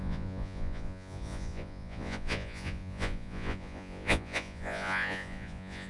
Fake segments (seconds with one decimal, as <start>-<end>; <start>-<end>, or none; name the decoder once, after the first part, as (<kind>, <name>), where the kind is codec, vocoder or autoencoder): 0.0-5.9 (vocoder, Vocos)